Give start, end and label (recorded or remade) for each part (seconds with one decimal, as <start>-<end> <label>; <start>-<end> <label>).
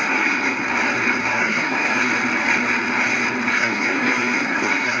0.0-0.6 remade; 0.6-1.2 recorded; 1.2-2.1 remade; 2.1-3.5 recorded; 3.5-5.0 remade